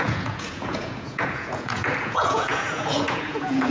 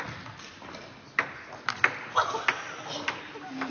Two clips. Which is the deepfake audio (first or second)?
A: first